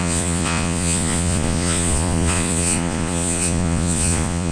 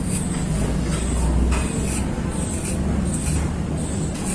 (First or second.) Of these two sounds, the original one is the second